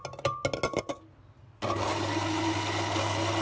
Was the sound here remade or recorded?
recorded